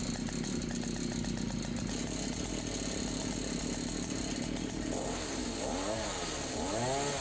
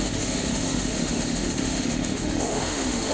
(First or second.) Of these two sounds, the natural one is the first